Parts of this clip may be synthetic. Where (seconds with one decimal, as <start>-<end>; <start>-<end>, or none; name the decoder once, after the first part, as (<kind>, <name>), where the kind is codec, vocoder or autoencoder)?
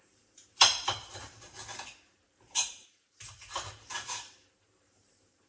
0.0-1.6 (vocoder, BigVGAN v2); 2.2-5.5